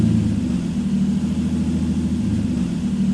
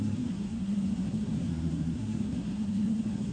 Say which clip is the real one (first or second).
first